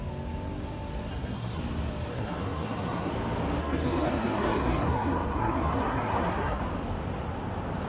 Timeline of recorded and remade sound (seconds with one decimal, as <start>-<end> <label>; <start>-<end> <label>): 0.0-1.1 recorded; 1.1-1.6 remade; 1.6-2.1 recorded; 2.1-3.1 remade; 3.1-3.6 recorded; 3.6-6.6 remade; 6.6-7.9 recorded